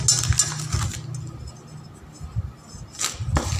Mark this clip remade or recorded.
recorded